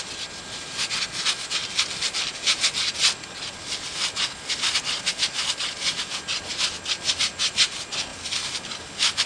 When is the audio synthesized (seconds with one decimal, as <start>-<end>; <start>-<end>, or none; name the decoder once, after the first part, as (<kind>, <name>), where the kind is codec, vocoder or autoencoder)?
1.6-2.9 (vocoder, BigVGAN v2); 8.1-8.8